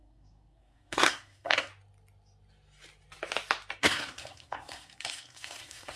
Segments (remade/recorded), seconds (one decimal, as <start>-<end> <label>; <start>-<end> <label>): 0.0-1.7 remade; 1.7-3.8 recorded; 3.8-6.0 remade